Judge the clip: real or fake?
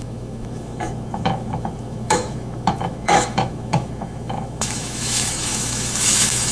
fake